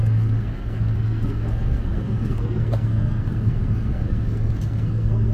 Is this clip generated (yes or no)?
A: yes